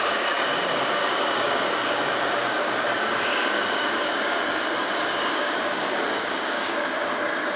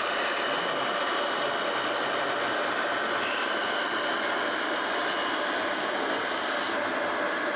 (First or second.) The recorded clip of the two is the second